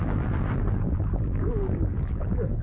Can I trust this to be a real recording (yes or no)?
no